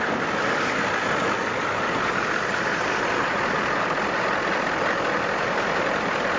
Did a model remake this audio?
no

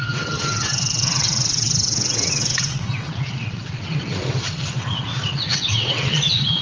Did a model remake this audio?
yes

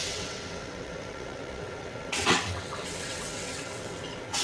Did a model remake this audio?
yes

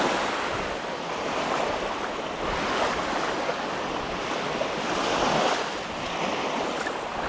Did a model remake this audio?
no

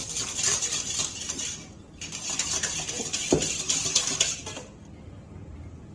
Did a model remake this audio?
no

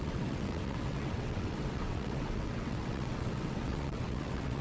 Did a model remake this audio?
yes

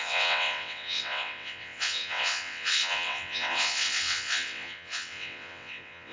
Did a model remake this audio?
yes